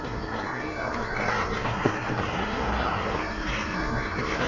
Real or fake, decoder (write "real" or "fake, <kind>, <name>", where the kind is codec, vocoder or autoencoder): fake, codec, SNAC